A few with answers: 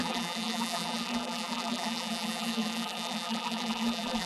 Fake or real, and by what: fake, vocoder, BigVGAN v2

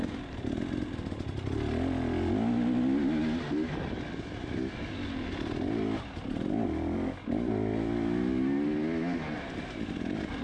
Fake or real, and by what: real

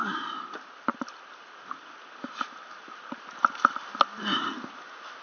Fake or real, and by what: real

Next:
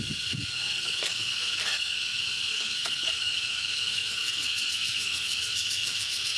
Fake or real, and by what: fake, codec, SNAC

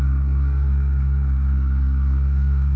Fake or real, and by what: fake, codec, SNAC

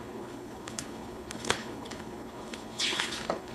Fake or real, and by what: fake, codec, HILCodec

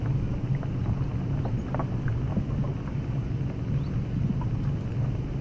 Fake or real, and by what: real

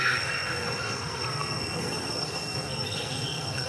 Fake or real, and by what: fake, codec, SNAC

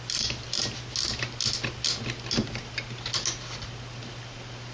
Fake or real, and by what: real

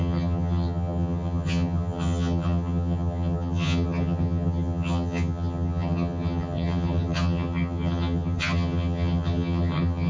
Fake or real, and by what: fake, vocoder, HiFi-GAN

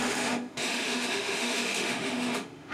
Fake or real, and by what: fake, autoencoder, DAC-VAE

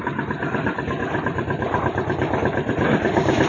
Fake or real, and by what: fake, vocoder, BigVGAN v2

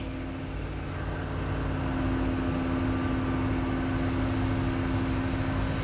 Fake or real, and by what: real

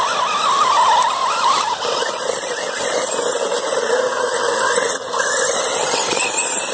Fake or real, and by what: real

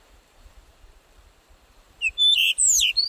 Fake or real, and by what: fake, vocoder, BigVGAN v2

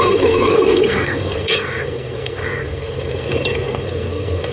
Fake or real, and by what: fake, codec, SNAC